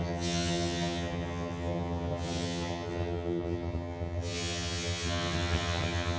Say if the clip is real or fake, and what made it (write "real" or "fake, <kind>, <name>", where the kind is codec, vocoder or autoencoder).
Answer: fake, vocoder, HiFi-GAN